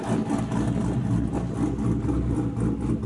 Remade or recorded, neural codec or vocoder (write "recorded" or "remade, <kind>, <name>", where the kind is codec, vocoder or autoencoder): recorded